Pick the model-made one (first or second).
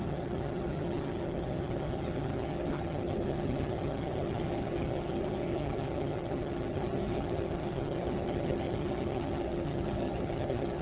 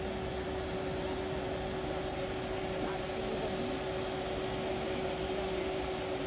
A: first